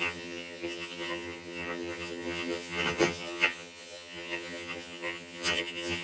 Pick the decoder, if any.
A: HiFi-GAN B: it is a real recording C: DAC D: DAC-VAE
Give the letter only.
A